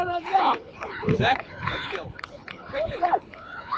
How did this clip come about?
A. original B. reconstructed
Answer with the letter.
B